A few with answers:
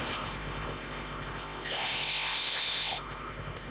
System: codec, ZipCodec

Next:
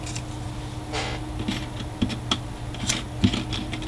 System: none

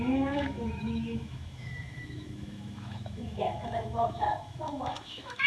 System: autoencoder, DAC-VAE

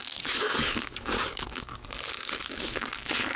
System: codec, DAC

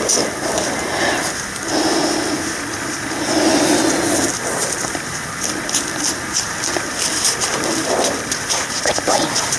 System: none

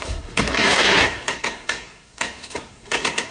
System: codec, SNAC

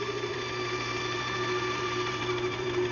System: vocoder, BigVGAN v2